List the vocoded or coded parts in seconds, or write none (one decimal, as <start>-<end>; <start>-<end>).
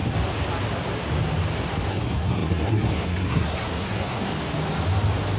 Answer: 1.9-4.3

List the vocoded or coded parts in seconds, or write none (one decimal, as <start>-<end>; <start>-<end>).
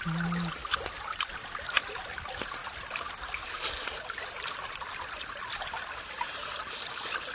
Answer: none